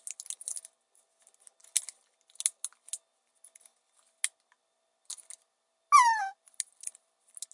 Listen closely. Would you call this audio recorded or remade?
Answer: recorded